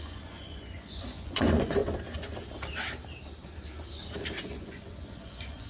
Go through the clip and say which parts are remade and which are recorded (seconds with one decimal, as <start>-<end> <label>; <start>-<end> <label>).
0.0-1.8 remade; 1.8-4.4 recorded; 4.4-5.7 remade

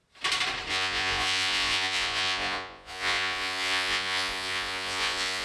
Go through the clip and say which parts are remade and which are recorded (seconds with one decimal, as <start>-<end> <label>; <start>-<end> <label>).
0.0-0.7 recorded; 0.7-5.4 remade

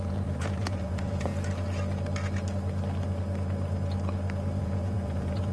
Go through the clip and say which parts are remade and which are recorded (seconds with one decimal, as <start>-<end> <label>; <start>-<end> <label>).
0.0-1.3 remade; 1.3-4.6 recorded; 4.6-5.5 remade

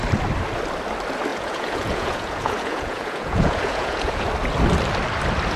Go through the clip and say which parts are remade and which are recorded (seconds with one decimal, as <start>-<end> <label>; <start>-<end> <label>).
0.0-1.3 recorded; 1.3-4.3 remade; 4.3-5.6 recorded

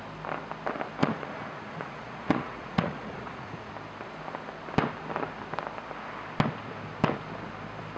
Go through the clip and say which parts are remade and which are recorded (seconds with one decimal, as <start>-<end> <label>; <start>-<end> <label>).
0.0-1.0 recorded; 1.0-3.7 remade; 3.7-8.0 recorded

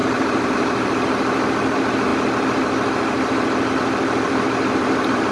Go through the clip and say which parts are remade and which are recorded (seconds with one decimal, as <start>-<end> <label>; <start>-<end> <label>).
0.0-5.3 recorded